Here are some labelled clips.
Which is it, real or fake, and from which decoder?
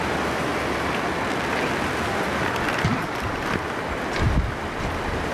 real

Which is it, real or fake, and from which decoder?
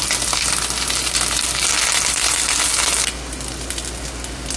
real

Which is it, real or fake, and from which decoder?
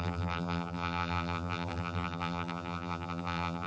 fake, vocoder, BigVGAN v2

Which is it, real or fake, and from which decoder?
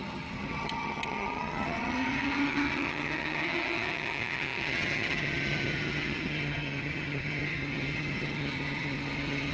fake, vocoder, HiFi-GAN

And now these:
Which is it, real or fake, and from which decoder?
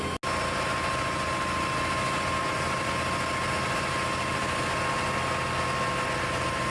real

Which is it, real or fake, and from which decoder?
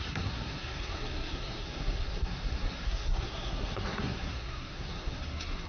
fake, codec, SNAC